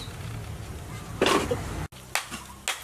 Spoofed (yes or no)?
no